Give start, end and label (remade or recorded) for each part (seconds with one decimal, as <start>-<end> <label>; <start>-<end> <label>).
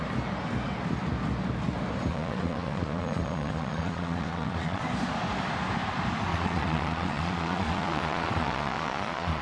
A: 0.0-2.1 recorded; 2.1-4.8 remade; 4.8-6.3 recorded; 6.3-9.4 remade